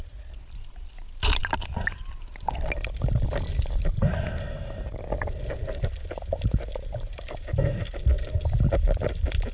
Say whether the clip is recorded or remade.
recorded